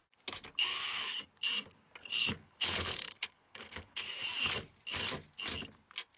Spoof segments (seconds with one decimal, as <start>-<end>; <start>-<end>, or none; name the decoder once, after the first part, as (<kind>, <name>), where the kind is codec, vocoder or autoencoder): 0.7-1.2 (codec, HILCodec); 2.0-4.2